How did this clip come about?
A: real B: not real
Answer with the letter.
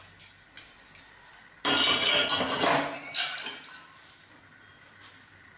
A